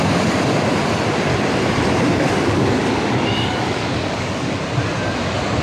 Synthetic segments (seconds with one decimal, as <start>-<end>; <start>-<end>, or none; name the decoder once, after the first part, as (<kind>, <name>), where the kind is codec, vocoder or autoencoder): 2.1-4.6 (codec, DAC)